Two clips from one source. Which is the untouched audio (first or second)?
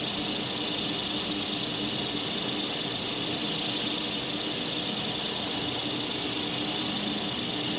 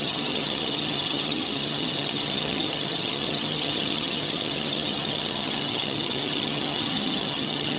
first